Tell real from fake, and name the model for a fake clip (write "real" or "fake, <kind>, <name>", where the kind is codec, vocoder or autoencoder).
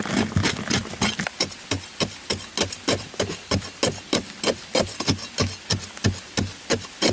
real